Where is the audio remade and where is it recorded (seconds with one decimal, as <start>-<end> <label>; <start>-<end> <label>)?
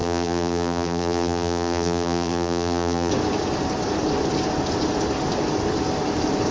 0.0-3.1 remade; 3.1-6.5 recorded